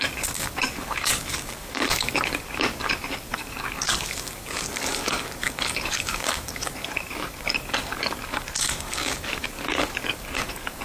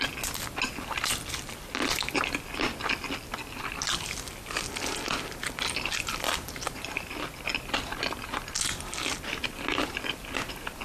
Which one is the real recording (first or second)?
second